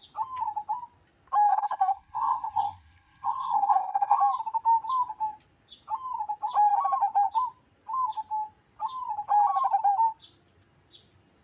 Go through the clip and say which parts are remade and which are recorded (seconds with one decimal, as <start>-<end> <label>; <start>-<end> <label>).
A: 0.0-1.5 recorded; 1.5-4.2 remade; 4.2-11.4 recorded